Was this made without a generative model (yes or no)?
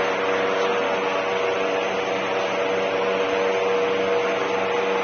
yes